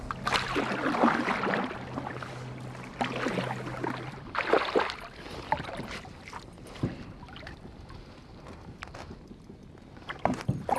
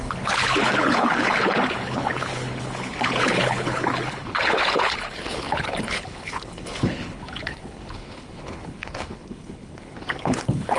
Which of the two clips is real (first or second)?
first